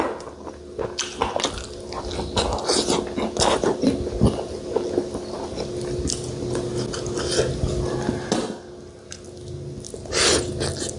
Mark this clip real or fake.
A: real